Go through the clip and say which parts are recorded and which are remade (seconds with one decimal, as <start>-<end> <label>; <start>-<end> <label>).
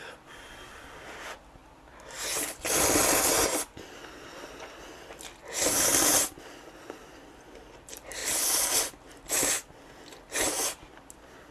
0.0-11.5 recorded